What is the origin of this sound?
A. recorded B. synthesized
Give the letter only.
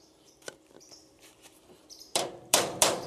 B